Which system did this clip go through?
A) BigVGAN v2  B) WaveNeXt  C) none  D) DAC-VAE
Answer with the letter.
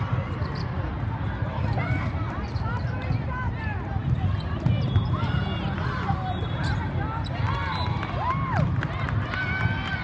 C